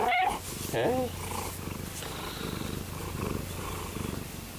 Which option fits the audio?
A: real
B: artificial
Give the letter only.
B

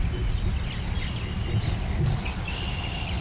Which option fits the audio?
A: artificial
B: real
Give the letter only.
B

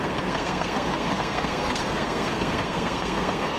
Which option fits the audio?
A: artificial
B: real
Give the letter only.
A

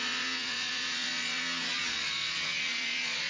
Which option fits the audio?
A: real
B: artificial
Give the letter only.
B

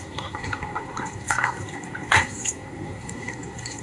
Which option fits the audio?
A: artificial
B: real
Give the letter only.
A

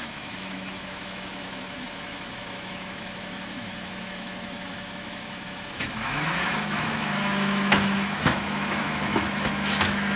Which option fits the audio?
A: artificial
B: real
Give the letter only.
A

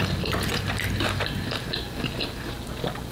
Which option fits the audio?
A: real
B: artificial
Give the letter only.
A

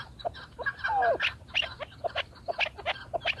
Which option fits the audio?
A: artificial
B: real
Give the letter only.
B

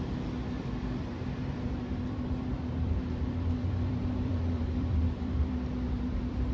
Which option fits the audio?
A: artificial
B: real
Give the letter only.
A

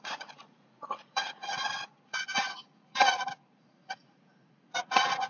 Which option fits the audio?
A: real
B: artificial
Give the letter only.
B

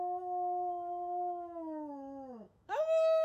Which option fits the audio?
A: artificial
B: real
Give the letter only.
A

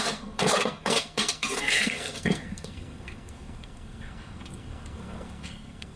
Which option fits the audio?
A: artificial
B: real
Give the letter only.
A